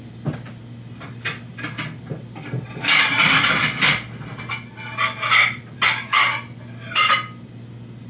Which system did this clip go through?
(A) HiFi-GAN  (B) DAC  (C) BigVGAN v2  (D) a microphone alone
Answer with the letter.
D